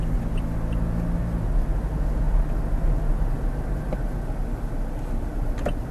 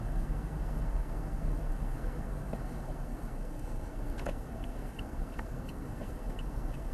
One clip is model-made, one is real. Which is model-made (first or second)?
second